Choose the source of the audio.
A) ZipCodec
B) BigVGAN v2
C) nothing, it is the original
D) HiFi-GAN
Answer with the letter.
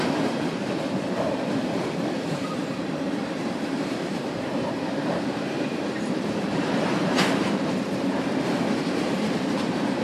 B